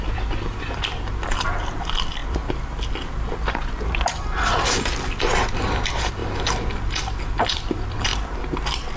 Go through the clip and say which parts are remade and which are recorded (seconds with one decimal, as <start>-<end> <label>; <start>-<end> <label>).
0.0-6.2 remade; 6.2-6.9 recorded; 6.9-8.1 remade; 8.1-9.0 recorded